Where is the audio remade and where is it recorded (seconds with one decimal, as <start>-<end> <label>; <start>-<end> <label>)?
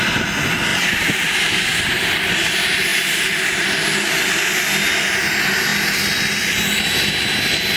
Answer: 0.0-0.7 recorded; 0.7-2.0 remade; 2.0-7.8 recorded